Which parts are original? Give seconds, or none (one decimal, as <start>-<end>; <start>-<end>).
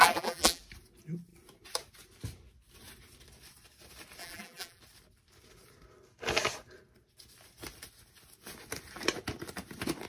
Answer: 0.6-4.2; 4.8-10.1